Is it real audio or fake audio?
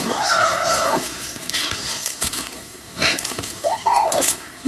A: fake